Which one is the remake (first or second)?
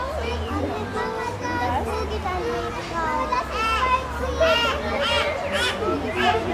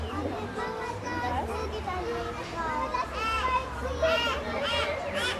second